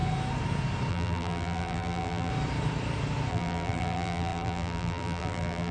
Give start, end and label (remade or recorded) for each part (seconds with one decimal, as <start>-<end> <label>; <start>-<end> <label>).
0.0-0.9 recorded; 0.9-2.3 remade; 2.3-3.3 recorded; 3.3-5.7 remade